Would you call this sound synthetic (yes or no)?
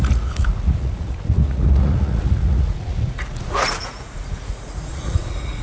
yes